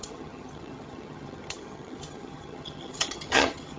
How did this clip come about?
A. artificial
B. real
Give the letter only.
A